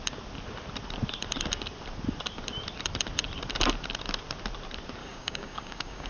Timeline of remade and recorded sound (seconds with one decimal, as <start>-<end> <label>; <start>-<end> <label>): 0.0-5.0 recorded; 5.0-6.1 remade